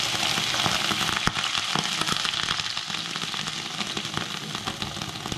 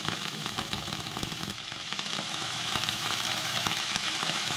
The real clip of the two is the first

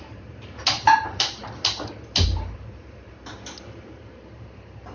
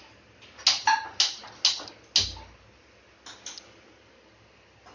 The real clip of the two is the second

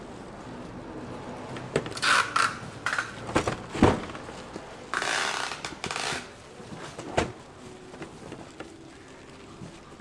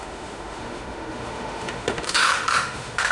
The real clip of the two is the first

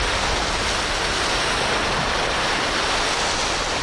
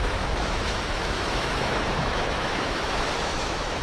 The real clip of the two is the first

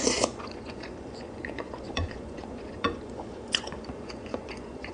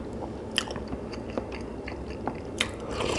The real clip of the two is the second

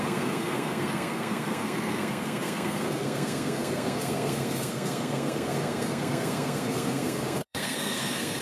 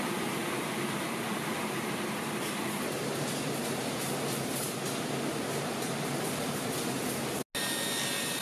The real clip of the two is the second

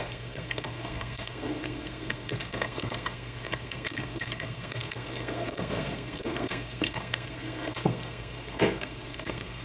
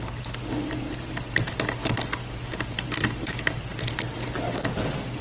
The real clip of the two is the second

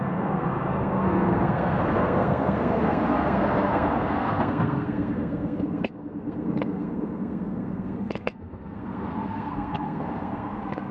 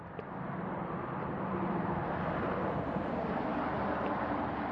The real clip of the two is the second